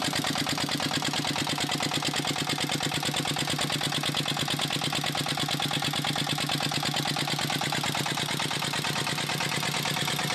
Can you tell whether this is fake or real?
real